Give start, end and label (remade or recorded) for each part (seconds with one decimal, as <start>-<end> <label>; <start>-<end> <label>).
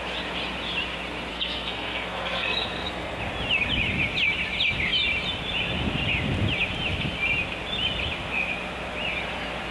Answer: 0.0-1.3 recorded; 1.3-3.2 remade; 3.2-9.7 recorded